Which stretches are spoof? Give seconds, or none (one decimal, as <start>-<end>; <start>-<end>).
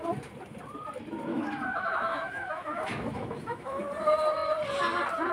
1.3-3.8